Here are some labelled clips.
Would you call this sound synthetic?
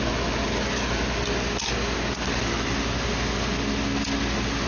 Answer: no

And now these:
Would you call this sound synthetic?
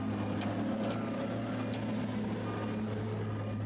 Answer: no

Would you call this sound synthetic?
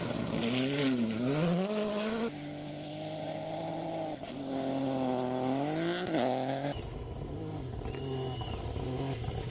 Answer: no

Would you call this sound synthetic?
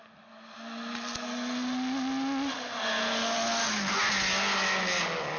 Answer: no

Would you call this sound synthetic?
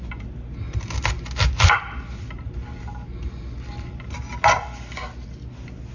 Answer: no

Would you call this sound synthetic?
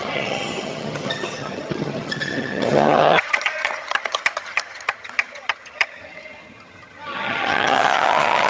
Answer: yes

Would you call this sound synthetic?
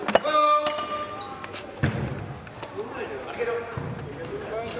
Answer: no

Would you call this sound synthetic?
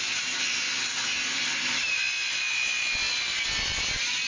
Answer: no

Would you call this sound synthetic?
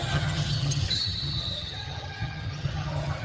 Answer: yes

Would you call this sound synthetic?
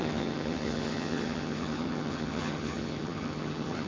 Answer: yes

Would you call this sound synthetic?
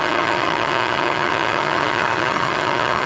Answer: yes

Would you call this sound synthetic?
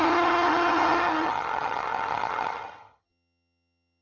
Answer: yes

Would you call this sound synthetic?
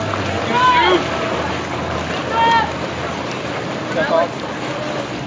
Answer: no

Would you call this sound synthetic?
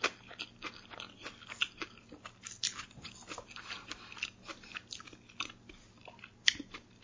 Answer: no